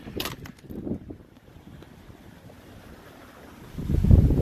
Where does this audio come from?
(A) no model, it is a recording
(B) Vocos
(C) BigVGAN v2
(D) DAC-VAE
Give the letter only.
C